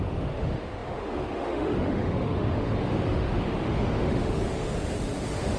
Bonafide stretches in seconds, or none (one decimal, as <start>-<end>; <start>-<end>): none

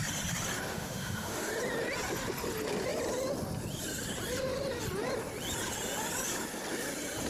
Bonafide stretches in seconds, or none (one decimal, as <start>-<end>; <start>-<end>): 0.0-0.7; 1.5-7.3

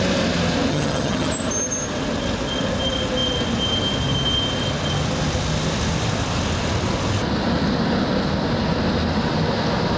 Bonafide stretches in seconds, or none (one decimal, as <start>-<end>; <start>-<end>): 0.0-0.7; 1.3-10.0

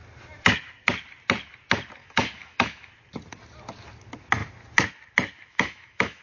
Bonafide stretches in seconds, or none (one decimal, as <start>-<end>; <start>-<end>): 0.0-2.0; 2.9-5.5

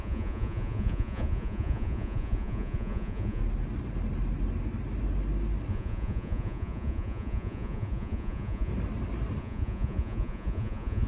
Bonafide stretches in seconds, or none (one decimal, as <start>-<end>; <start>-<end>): 3.4-5.7; 8.7-9.4